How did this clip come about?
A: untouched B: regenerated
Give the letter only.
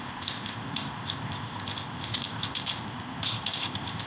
B